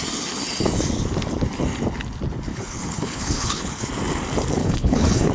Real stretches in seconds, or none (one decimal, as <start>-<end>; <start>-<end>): 0.0-2.5; 3.9-4.6

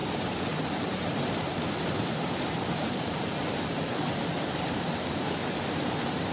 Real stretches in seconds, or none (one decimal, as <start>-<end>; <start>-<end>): none

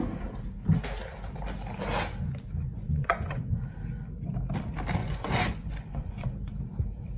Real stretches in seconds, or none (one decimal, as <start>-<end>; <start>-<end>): 0.0-2.7; 3.5-5.0; 6.6-7.2

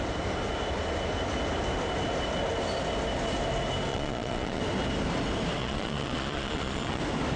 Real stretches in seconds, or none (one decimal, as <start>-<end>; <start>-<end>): 0.0-3.9; 4.6-5.6; 7.0-7.4

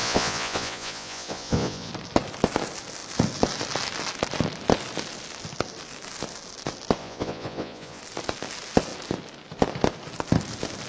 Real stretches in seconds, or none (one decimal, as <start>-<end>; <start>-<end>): 1.9-7.0; 8.0-10.9